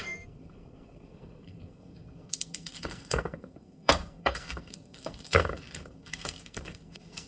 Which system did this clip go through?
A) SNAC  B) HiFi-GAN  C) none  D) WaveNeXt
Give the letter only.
A